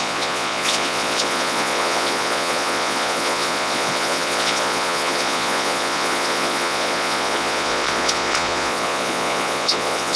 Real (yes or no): no